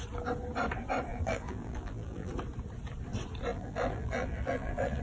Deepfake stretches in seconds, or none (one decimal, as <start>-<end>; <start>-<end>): 1.1-2.3; 3.5-5.0